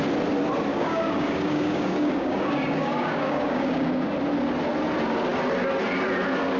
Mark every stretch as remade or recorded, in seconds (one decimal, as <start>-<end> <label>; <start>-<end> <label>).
0.0-0.7 recorded; 0.7-4.1 remade; 4.1-6.6 recorded